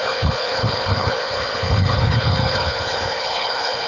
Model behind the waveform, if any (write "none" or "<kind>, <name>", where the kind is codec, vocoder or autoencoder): codec, HILCodec